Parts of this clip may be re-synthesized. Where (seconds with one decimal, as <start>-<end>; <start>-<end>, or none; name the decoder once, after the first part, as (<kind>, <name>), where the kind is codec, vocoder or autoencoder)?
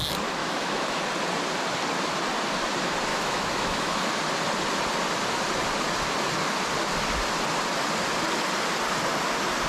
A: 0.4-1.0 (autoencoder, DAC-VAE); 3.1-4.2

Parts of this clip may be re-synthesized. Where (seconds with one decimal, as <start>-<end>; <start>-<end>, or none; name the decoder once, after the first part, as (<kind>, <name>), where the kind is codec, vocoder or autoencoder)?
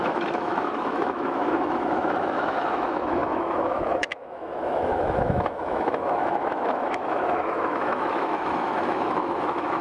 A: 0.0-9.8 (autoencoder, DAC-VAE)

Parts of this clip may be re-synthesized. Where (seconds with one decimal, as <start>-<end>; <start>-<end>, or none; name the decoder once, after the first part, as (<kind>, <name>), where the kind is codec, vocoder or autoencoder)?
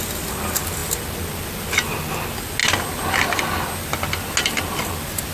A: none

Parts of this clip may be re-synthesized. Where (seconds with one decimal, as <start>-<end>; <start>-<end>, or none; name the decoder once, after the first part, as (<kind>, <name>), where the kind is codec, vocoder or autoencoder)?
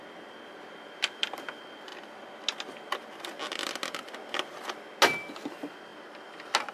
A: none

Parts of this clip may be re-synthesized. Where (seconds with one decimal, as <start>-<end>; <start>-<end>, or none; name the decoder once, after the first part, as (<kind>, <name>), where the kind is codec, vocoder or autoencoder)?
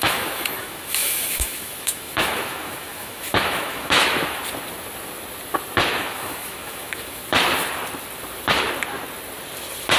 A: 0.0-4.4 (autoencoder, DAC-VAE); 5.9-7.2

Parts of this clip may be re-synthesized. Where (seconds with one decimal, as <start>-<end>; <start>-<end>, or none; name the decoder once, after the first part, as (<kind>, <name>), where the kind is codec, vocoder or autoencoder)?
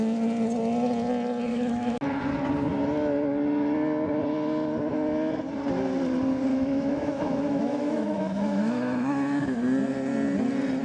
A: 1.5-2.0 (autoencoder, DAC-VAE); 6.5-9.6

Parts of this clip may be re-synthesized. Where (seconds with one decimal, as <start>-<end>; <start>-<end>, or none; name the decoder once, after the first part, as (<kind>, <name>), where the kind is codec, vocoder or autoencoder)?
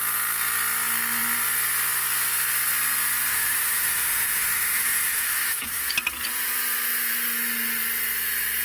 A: 3.3-5.8 (autoencoder, DAC-VAE)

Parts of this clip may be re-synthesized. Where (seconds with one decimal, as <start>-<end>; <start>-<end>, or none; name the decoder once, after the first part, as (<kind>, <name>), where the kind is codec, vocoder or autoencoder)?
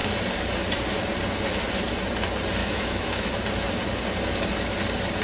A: 2.6-3.3 (autoencoder, DAC-VAE)